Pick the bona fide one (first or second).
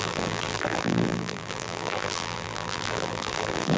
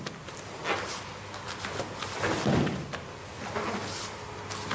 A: second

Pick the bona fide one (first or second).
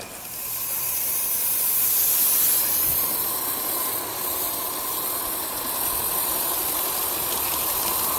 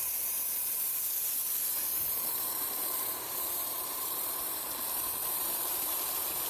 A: first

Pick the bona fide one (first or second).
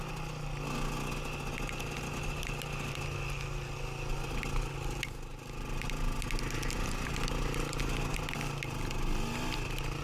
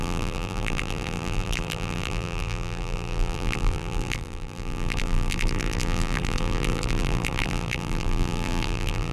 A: first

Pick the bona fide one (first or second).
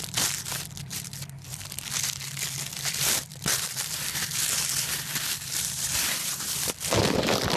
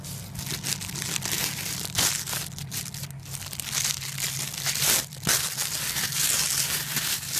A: second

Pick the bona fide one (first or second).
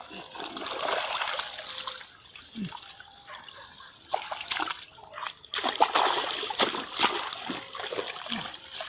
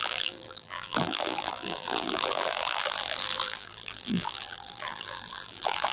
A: first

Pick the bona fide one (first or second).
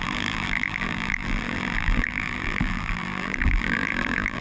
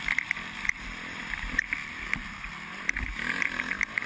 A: second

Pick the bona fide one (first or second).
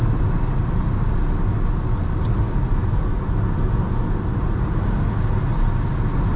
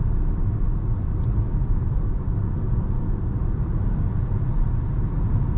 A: first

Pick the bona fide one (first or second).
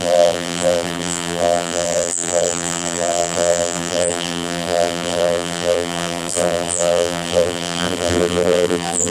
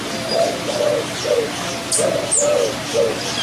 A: second